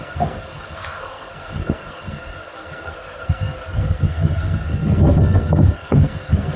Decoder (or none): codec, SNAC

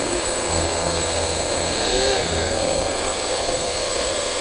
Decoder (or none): codec, SNAC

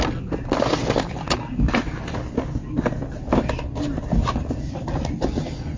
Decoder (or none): none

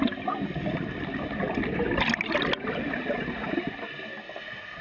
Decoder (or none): none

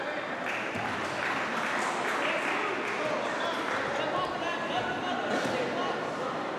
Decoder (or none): none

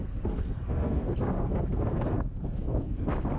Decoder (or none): codec, SNAC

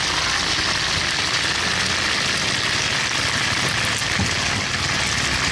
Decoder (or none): none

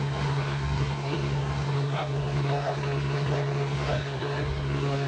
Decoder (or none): codec, SNAC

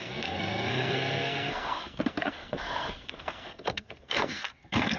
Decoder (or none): codec, SNAC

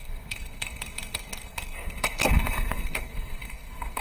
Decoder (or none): codec, SNAC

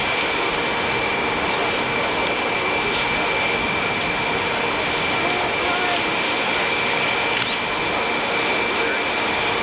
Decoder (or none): none